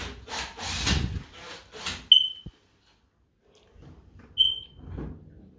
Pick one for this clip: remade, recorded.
recorded